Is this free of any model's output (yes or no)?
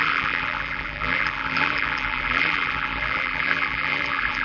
no